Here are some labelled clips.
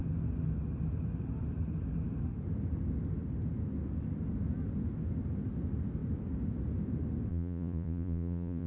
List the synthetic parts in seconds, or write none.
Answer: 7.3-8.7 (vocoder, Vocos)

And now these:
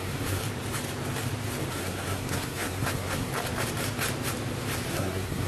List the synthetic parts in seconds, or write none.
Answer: 0.0-0.4 (codec, SNAC); 1.7-3.3; 4.9-5.5

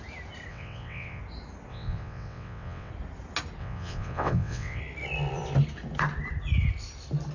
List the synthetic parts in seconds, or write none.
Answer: 0.5-1.2 (vocoder, WaveNeXt); 1.7-2.9; 3.6-4.8

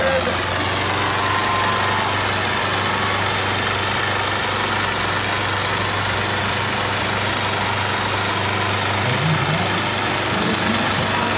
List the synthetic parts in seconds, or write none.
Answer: none

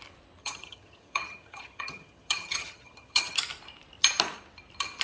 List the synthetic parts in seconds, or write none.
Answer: 0.4-3.4 (vocoder, HiFi-GAN)

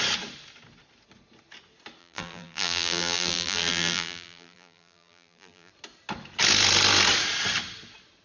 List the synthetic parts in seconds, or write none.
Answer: 2.0-5.7 (vocoder, BigVGAN v2)

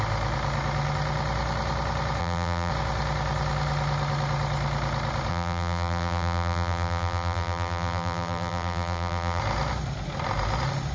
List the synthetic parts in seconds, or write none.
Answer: 2.2-2.7 (vocoder, BigVGAN v2); 5.3-9.4

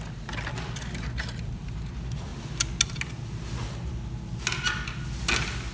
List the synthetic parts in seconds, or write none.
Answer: none